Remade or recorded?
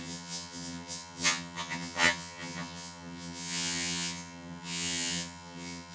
remade